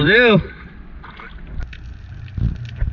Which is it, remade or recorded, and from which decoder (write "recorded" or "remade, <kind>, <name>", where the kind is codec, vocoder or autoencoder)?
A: recorded